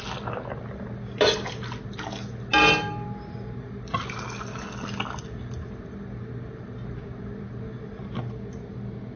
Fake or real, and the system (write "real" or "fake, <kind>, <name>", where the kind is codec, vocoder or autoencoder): real